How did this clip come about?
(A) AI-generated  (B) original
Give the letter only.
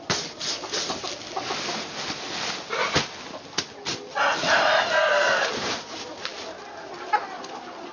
B